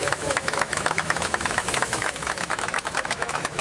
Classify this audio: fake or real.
fake